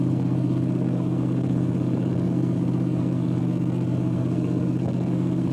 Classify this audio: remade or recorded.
remade